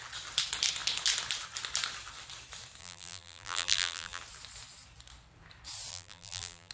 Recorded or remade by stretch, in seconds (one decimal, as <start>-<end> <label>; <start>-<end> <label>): 0.0-2.8 recorded; 2.8-4.2 remade; 4.2-5.9 recorded; 5.9-6.7 remade